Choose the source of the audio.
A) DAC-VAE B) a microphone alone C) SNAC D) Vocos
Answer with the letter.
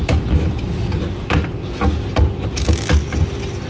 B